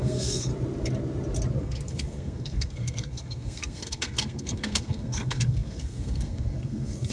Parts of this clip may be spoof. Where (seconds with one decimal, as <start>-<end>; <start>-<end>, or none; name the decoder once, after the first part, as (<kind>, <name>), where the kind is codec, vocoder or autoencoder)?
0.0-0.5 (codec, SNAC); 1.6-7.1